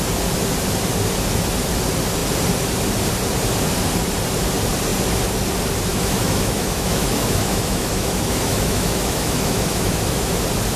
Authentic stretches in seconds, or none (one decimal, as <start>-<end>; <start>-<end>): 0.0-5.9; 10.3-10.8